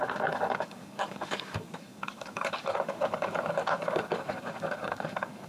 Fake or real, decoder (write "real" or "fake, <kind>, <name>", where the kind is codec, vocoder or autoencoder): fake, codec, DAC